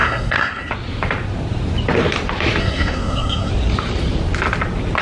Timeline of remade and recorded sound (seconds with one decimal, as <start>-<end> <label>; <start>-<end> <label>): 0.0-0.7 remade; 0.7-2.6 recorded; 2.6-3.5 remade; 3.5-5.0 recorded

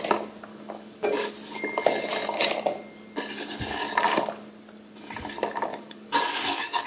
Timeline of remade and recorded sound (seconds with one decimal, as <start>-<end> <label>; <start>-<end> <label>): 0.0-0.5 recorded; 0.5-1.3 remade; 1.3-5.7 recorded; 5.7-6.9 remade

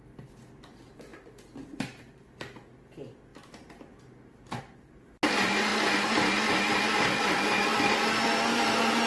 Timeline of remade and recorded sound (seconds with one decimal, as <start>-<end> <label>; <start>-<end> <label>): 0.0-9.1 recorded

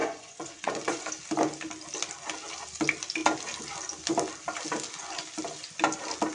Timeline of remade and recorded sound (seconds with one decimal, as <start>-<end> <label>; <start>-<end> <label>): 0.0-1.1 remade; 1.1-6.3 recorded

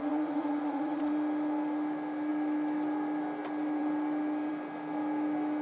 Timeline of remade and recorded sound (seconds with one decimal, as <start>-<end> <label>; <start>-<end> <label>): 0.0-1.1 remade; 1.1-5.6 recorded

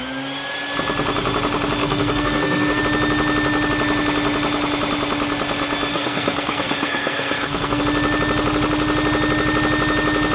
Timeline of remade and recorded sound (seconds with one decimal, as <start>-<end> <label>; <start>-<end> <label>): 0.0-1.8 recorded; 1.8-2.8 remade; 2.8-5.9 recorded; 5.9-7.8 remade; 7.8-10.3 recorded

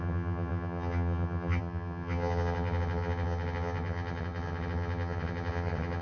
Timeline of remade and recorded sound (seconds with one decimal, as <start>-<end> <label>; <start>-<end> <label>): 0.0-6.0 remade

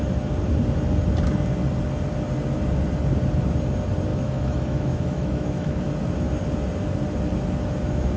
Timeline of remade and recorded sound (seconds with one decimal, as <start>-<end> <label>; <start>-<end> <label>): 0.0-4.1 recorded; 4.1-5.8 remade; 5.8-8.2 recorded